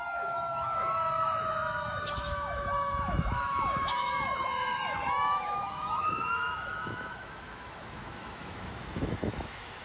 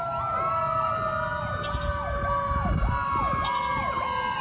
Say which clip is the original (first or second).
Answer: second